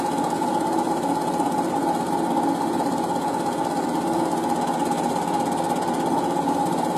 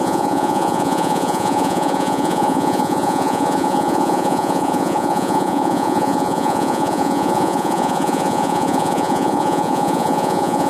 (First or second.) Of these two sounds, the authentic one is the first